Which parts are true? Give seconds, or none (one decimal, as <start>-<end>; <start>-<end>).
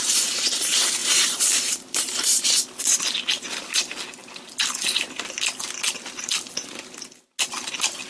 0.0-1.0; 2.7-8.1